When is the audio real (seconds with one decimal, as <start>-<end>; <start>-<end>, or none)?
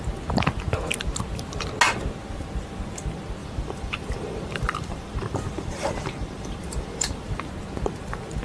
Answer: 0.0-3.4; 7.5-8.4